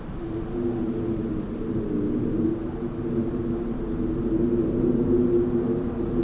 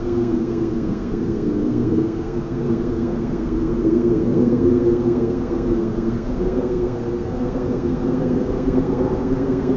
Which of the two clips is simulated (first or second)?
second